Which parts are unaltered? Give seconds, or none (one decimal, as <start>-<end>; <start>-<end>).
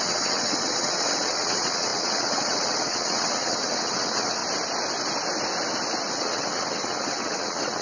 4.4-6.1